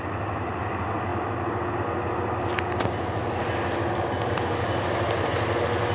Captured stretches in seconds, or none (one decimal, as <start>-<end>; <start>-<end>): 0.0-5.9